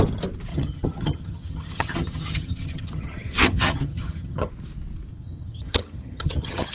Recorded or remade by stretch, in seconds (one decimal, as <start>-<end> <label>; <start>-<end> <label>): 0.0-0.5 recorded; 0.5-4.5 remade; 4.5-5.1 recorded; 5.1-6.7 remade